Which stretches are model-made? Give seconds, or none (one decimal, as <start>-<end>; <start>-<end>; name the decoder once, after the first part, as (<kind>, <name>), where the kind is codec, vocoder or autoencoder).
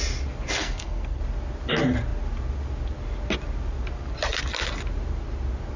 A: 0.6-1.2 (codec, SNAC)